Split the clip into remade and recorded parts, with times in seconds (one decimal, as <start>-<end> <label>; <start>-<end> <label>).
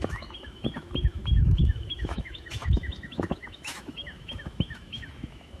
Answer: 0.0-5.6 remade